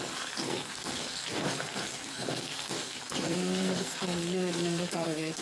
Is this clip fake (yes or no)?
yes